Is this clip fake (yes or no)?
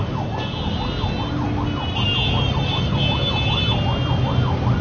no